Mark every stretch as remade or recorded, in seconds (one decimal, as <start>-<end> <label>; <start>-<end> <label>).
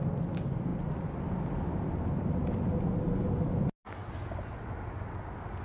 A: 0.0-5.6 recorded